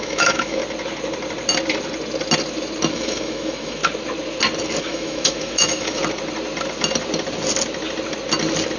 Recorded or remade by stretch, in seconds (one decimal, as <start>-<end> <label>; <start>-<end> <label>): 0.0-0.6 remade; 0.6-2.9 recorded; 2.9-3.8 remade; 3.8-4.8 recorded; 4.8-6.0 remade; 6.0-8.8 recorded